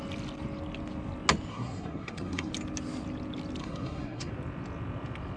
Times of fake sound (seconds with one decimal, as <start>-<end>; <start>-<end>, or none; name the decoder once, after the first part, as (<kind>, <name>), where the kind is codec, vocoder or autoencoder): 1.5-2.5 (codec, SNAC); 3.6-4.3